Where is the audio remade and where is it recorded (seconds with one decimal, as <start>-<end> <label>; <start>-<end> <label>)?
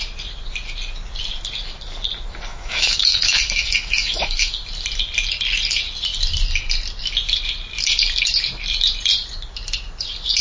0.0-2.5 recorded; 2.5-4.5 remade; 4.5-10.4 recorded